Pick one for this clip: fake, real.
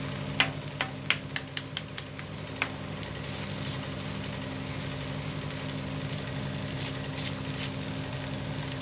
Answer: real